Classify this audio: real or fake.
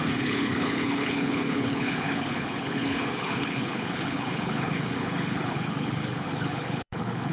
fake